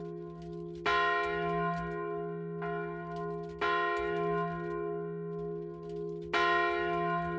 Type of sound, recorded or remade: recorded